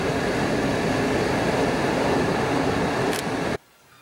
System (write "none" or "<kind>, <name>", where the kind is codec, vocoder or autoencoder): none